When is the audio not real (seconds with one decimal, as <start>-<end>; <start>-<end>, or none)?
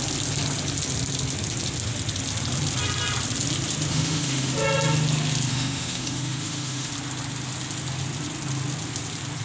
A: 3.9-4.5; 5.5-6.9